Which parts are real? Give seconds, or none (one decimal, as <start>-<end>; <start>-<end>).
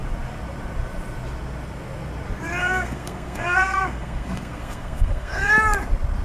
0.0-2.6; 5.5-6.2